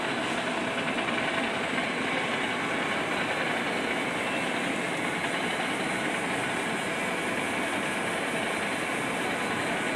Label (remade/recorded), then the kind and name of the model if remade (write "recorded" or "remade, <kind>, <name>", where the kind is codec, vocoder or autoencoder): recorded